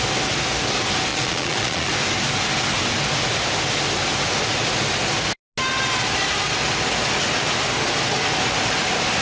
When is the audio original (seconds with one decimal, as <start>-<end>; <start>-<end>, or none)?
0.0-1.1; 1.9-9.2